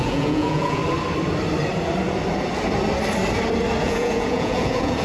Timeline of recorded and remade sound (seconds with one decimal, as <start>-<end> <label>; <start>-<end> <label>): 0.0-0.8 remade; 0.8-3.8 recorded; 3.8-5.0 remade